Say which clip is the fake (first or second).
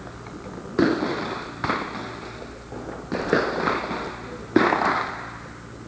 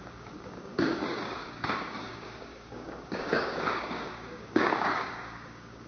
second